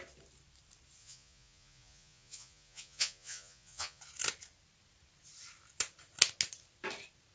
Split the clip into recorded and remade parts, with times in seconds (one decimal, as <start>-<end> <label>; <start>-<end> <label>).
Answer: 0.0-1.0 recorded; 1.0-4.0 remade; 4.0-7.3 recorded